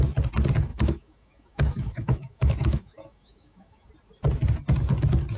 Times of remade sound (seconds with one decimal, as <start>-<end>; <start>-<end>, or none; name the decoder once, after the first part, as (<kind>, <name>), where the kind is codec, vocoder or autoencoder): 0.7-3.9 (autoencoder, DAC-VAE)